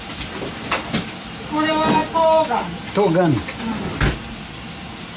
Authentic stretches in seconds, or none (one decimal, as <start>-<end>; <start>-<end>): 0.0-5.2